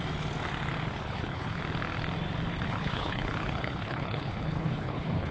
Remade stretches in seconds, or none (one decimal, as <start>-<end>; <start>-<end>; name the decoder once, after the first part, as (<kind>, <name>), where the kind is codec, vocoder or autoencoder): 1.0-1.6 (codec, HILCodec); 2.5-5.3

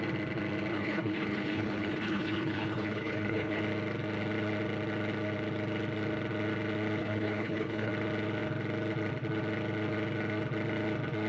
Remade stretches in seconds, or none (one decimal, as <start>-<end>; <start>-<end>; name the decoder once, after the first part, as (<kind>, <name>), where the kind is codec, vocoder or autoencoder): 0.7-3.6 (codec, HILCodec); 7.0-7.9

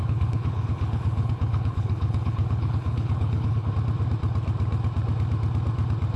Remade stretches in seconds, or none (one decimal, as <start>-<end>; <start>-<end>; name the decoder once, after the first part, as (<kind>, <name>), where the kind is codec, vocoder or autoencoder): 0.0-3.7 (codec, HILCodec)

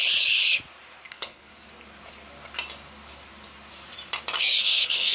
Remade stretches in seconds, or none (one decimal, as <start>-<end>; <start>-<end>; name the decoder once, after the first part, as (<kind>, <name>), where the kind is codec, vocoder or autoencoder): 1.1-1.5 (codec, HILCodec); 4.6-5.1

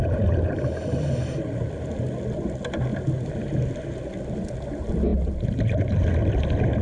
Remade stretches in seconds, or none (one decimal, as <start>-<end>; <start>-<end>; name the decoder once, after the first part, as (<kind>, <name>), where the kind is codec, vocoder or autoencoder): none

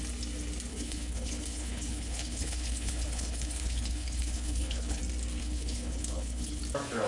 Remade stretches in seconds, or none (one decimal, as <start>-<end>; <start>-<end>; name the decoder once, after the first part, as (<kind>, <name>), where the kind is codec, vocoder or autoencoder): 0.7-5.0 (codec, HILCodec); 5.4-6.6

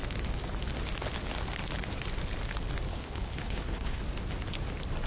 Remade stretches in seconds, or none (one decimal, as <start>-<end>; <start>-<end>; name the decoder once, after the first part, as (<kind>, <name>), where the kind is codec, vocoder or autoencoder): 2.9-4.0 (codec, HILCodec)